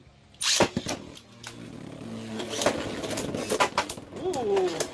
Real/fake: real